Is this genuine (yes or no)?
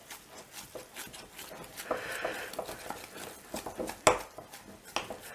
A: yes